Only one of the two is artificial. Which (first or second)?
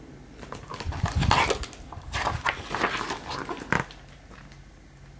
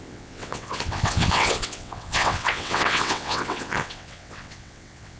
second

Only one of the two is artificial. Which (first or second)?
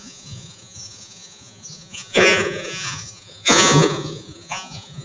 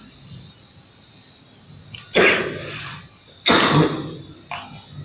first